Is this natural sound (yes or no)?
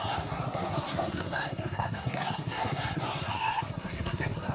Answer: no